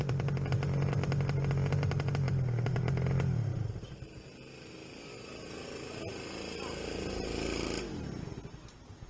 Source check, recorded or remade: recorded